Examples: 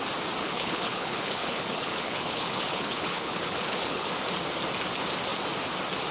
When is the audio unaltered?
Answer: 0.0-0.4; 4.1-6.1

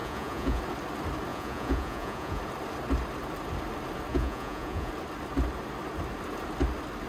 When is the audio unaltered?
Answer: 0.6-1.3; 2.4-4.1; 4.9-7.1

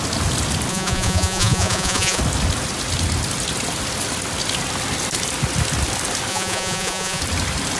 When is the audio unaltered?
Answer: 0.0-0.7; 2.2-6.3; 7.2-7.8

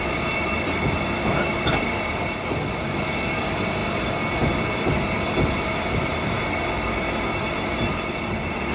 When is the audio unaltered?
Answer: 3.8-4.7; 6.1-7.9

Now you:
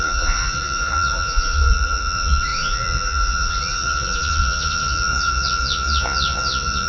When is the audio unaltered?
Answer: none

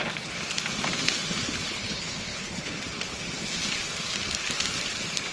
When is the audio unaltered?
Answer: 0.0-1.7; 2.8-5.3

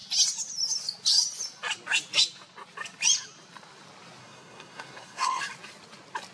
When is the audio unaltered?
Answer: 0.0-4.2; 5.4-6.3